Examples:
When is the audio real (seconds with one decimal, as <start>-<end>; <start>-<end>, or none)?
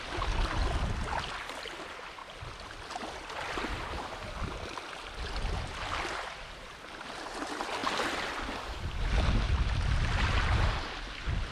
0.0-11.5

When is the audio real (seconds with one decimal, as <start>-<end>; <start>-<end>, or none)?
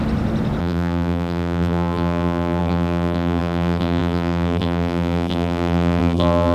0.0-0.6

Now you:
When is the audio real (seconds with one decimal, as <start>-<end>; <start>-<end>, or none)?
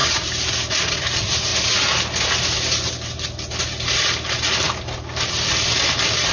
1.5-5.3